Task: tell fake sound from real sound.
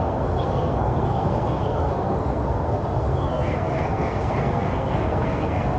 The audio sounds fake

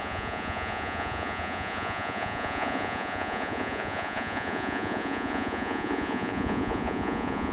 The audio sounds fake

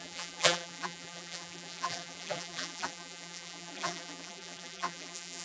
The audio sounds fake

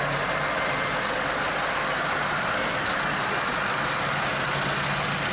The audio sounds real